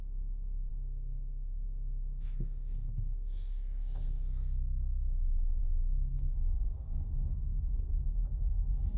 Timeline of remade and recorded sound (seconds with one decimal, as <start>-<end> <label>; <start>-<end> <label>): 0.0-9.0 remade